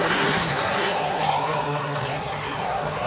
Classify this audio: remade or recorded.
remade